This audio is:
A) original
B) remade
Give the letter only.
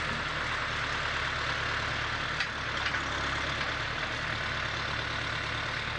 A